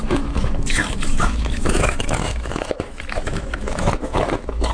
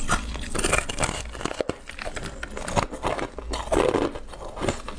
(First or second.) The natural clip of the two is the second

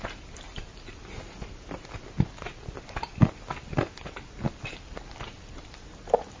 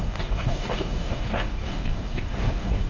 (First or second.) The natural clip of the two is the first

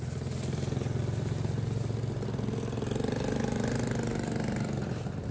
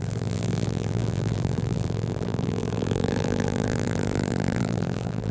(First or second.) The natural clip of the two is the first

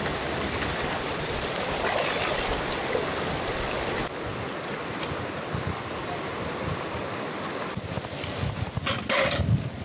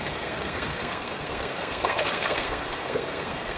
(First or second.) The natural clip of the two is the first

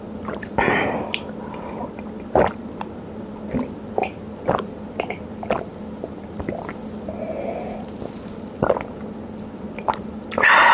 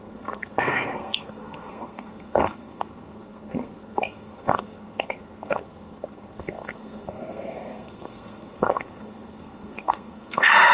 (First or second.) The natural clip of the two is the first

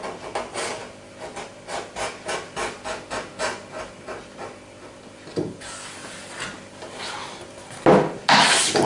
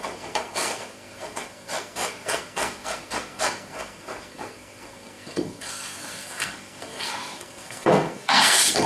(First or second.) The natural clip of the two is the first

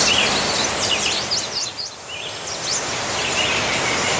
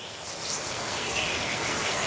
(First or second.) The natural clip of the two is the first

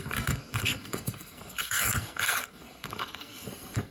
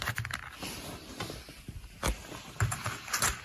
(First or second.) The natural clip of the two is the second